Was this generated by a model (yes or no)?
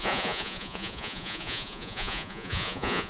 yes